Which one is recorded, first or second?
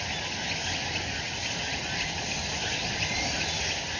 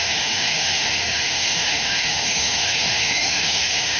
first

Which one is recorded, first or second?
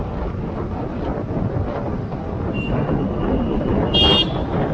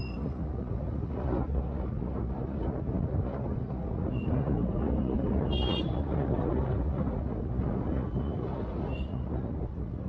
first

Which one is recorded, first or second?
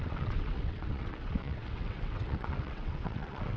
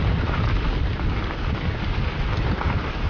second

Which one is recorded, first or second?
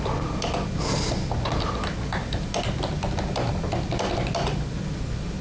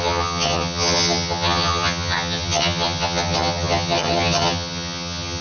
first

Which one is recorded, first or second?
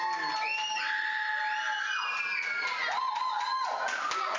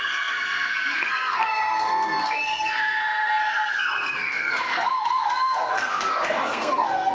first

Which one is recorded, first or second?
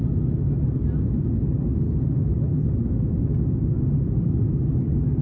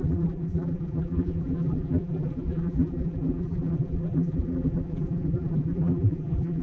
first